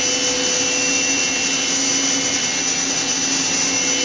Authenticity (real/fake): real